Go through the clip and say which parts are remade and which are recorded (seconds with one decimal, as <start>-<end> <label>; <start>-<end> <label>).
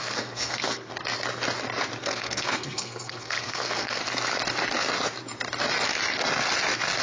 0.0-0.9 remade; 0.9-2.0 recorded; 2.0-4.0 remade; 4.0-7.0 recorded